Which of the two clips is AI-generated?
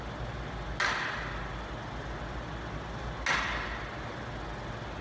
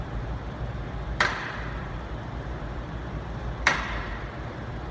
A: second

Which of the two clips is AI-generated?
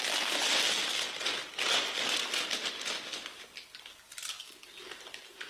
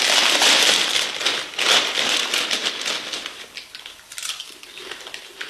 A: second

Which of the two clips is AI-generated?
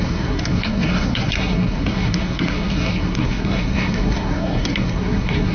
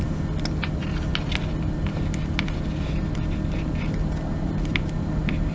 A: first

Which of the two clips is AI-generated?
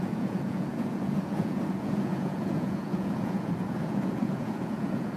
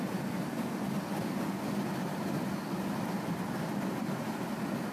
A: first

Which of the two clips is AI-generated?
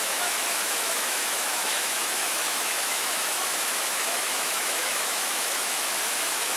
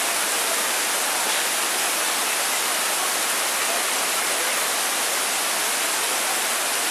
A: first